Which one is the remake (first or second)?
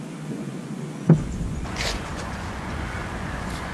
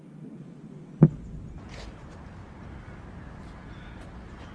first